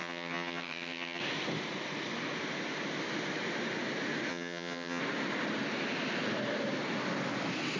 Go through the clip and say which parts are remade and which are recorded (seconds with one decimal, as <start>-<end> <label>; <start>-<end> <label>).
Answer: 0.0-1.2 remade; 1.2-4.3 recorded; 4.3-5.0 remade; 5.0-7.8 recorded